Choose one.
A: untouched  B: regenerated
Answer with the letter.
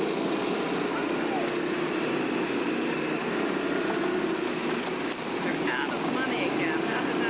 A